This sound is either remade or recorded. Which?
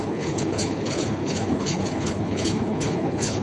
remade